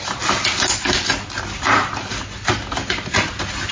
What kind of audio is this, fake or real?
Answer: real